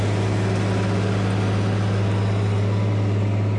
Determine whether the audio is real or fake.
real